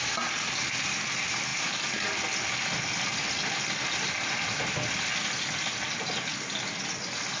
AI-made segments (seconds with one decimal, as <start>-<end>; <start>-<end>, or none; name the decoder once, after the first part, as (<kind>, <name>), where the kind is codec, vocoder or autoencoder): none